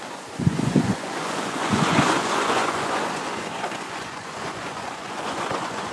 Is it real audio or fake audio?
fake